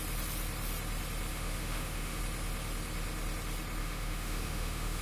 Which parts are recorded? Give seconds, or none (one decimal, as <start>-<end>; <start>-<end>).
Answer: 0.0-1.3; 2.2-3.8